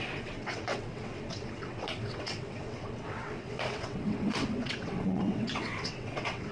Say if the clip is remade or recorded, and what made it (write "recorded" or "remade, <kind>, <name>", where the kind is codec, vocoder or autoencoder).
remade, vocoder, WaveNeXt